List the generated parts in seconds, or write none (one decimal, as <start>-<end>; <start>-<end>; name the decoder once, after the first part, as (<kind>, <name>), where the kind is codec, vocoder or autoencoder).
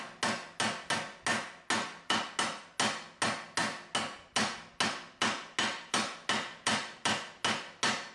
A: none